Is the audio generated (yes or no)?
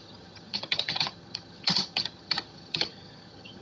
yes